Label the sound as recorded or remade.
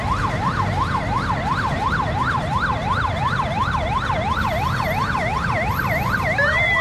recorded